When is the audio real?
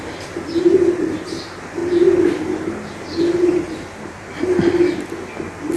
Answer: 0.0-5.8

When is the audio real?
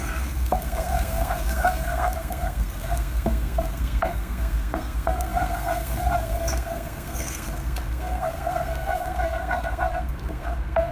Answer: none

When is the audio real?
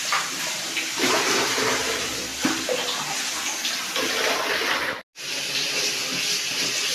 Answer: 2.3-6.4